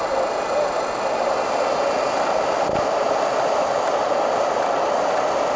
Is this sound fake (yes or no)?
no